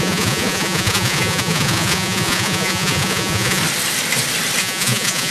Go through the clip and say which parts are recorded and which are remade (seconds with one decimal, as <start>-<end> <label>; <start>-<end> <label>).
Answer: 0.0-3.6 remade; 3.6-4.6 recorded; 4.6-5.3 remade